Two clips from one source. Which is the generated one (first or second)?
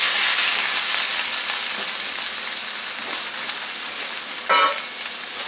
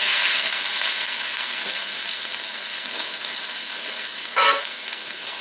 second